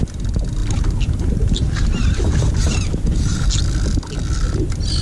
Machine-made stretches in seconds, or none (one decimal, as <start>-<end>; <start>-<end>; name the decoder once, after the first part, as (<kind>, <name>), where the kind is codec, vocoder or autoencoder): 0.6-3.6 (vocoder, BigVGAN v2)